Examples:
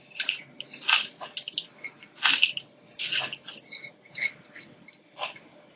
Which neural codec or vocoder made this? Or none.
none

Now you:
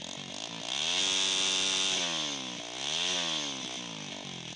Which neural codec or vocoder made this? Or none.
none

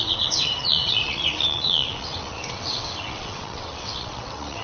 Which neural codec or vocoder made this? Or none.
vocoder, WaveNeXt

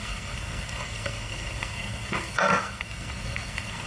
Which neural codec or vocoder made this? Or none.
codec, SNAC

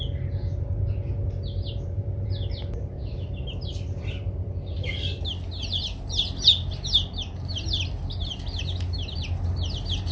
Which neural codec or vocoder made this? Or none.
none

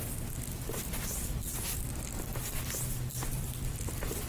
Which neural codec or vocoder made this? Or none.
none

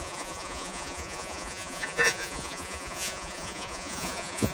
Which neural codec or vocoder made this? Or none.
vocoder, Vocos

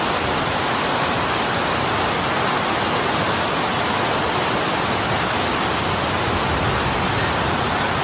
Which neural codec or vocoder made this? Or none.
none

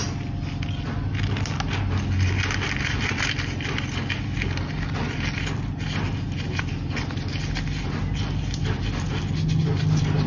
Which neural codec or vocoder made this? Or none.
none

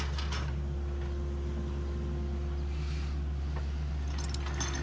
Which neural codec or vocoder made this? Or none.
none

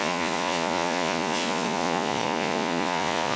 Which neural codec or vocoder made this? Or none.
vocoder, Vocos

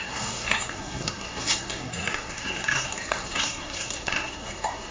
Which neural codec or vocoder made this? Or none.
codec, SNAC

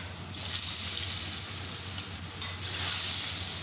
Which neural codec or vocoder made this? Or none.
none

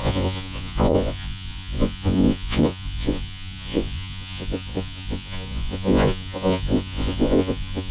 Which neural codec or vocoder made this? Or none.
vocoder, Vocos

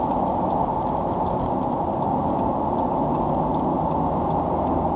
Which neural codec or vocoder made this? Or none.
none